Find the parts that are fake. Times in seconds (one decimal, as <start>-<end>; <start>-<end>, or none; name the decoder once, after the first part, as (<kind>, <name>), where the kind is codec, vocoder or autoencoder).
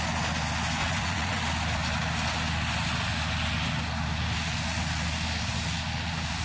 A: 0.8-1.4 (vocoder, Vocos)